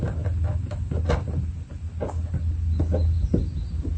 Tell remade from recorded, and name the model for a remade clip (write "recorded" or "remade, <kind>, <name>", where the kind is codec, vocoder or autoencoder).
recorded